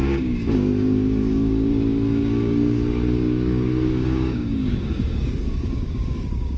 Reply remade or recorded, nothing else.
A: remade